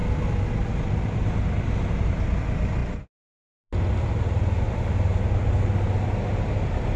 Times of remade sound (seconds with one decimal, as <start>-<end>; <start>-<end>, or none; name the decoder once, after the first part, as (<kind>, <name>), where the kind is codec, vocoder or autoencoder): none